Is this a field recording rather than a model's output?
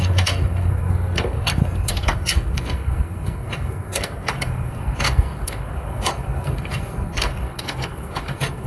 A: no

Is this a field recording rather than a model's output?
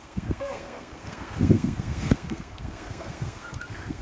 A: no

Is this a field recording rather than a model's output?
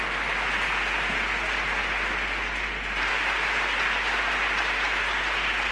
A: yes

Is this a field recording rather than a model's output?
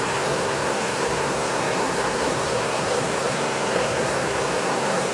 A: no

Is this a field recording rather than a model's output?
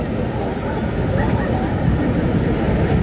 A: yes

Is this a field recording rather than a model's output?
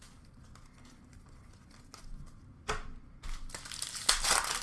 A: yes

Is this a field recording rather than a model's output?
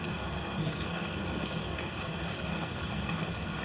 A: no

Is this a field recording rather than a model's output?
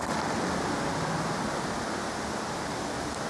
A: yes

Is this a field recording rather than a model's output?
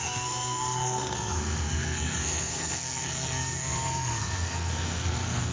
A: no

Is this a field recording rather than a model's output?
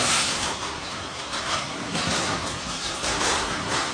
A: no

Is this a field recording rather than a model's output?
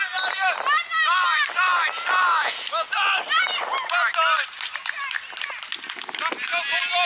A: yes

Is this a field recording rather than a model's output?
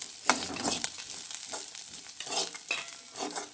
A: yes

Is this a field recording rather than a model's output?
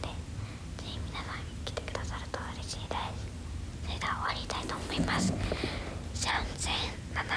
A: yes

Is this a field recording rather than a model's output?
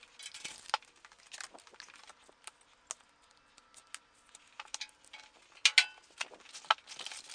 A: yes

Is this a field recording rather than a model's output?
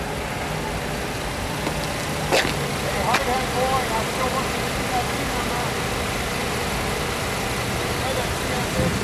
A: yes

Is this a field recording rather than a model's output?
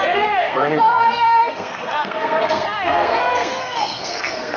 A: no